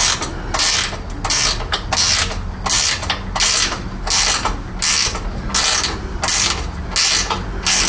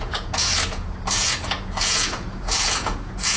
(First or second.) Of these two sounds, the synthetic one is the second